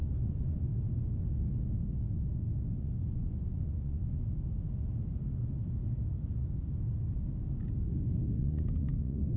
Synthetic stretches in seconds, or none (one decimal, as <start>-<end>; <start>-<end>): 0.0-0.7; 2.8-4.2; 8.4-9.4